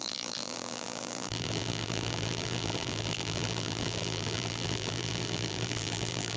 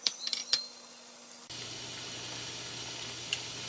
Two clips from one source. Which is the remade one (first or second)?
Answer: first